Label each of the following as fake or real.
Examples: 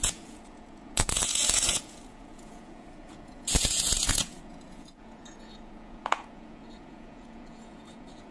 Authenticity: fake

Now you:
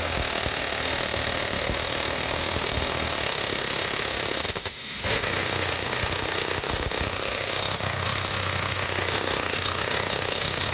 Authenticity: fake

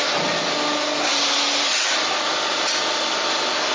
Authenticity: real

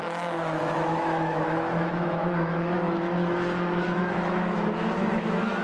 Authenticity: fake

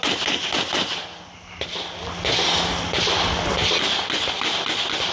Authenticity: real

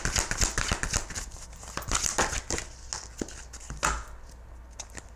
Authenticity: real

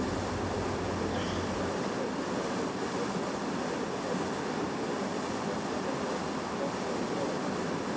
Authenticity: real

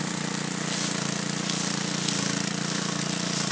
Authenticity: real